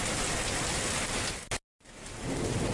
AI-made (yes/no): no